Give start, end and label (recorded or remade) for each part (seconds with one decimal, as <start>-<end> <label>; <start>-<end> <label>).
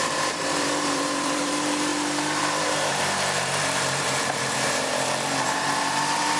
0.0-6.4 remade